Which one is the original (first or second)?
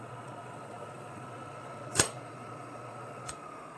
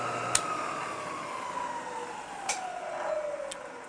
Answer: second